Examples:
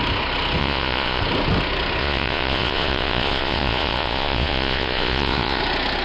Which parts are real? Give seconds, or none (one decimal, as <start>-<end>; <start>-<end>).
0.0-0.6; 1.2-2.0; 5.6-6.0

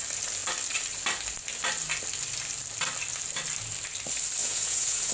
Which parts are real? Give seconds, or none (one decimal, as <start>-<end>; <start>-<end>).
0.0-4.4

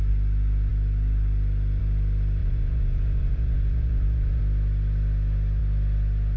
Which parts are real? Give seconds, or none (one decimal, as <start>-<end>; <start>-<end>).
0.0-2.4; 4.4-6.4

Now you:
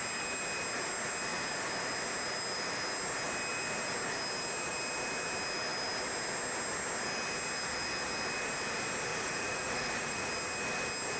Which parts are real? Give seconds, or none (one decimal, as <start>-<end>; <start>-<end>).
0.0-9.1; 10.3-11.2

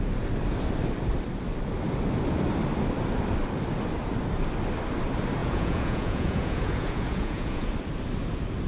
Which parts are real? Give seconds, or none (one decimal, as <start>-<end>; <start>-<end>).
0.0-5.4; 7.7-8.7

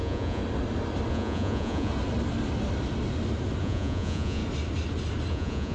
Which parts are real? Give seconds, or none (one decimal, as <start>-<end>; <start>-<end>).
0.4-1.1; 1.9-3.6; 4.4-5.3